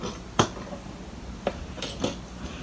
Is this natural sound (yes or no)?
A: yes